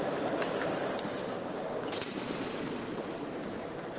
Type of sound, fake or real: fake